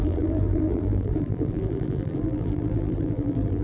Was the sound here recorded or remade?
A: remade